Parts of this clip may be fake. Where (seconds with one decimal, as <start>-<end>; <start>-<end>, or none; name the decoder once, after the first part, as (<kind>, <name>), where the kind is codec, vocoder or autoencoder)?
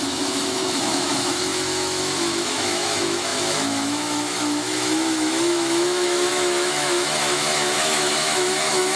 0.0-9.0 (autoencoder, DAC-VAE)